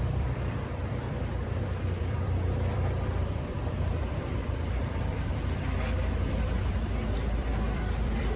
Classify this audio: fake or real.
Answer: fake